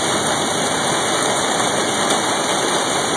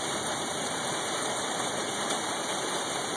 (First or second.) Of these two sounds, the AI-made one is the second